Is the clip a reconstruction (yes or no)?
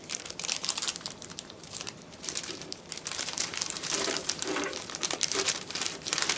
yes